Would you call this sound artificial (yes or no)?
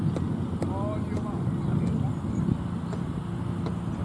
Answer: no